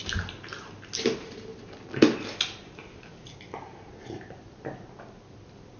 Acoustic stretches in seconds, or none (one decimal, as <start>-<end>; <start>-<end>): 0.0-5.8